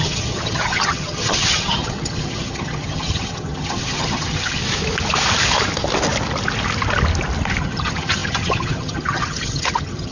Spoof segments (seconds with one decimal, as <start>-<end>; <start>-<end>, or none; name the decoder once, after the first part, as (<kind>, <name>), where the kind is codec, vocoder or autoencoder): 0.0-4.6 (vocoder, HiFi-GAN); 7.6-10.1